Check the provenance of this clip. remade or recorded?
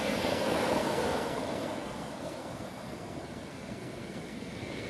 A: remade